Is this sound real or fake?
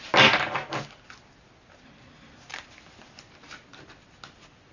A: real